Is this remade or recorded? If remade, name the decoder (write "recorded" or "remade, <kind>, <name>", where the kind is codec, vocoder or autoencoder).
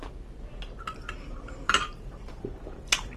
remade, vocoder, BigVGAN v2